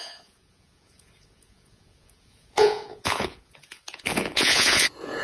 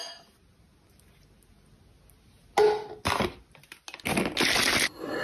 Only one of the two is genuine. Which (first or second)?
second